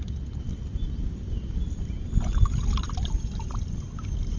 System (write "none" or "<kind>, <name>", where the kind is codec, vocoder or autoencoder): none